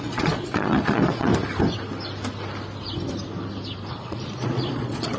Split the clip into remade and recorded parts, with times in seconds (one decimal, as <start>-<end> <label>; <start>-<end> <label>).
0.0-1.3 remade; 1.3-3.9 recorded; 3.9-5.2 remade